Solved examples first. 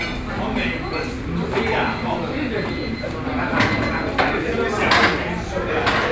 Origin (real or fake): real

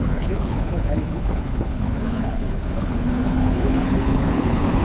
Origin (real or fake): fake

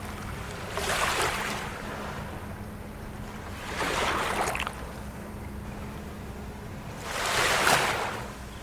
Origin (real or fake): real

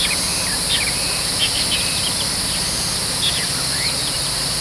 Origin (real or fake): real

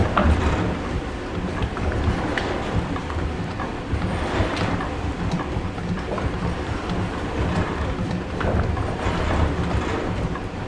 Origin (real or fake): fake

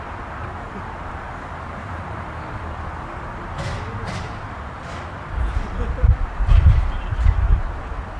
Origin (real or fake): fake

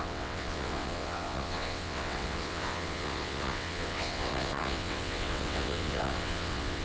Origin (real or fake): fake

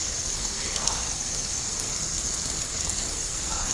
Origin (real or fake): fake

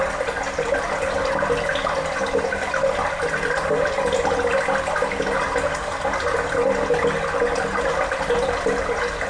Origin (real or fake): real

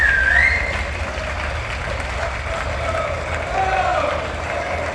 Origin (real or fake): real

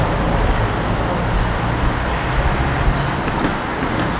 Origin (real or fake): real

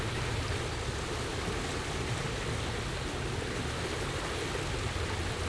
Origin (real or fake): real